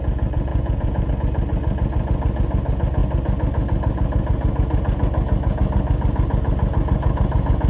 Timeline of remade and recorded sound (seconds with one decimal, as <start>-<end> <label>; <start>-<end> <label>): 0.0-0.5 recorded; 0.5-1.1 remade; 1.1-7.7 recorded